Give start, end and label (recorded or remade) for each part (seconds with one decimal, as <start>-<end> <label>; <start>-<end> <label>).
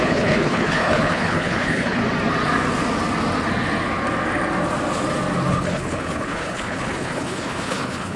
0.0-2.0 remade; 2.0-5.5 recorded; 5.5-8.2 remade